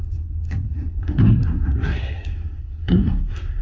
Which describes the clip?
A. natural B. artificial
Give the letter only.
B